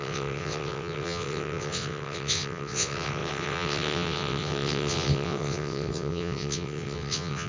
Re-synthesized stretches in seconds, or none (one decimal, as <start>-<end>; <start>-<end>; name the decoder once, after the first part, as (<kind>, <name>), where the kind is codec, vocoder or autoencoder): 0.0-7.5 (vocoder, WaveNeXt)